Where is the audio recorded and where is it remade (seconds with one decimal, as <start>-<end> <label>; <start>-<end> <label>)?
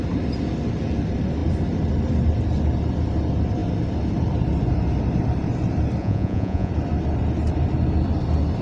0.0-6.0 recorded; 6.0-6.7 remade; 6.7-8.6 recorded